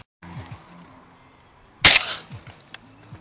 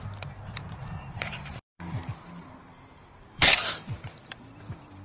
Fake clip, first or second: second